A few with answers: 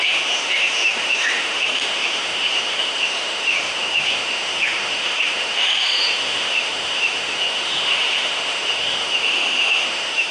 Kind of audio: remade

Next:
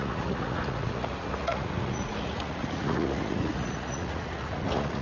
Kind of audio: remade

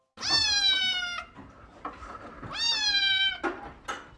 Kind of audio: recorded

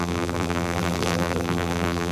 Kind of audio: remade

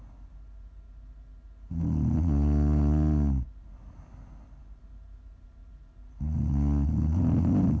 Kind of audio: recorded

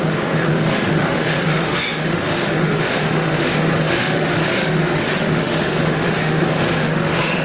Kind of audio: remade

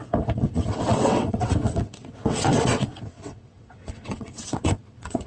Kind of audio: remade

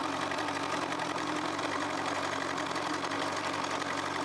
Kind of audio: recorded